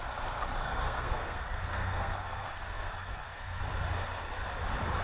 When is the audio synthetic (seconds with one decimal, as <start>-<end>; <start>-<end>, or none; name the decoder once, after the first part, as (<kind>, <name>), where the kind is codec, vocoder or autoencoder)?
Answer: 0.6-3.6 (codec, SNAC)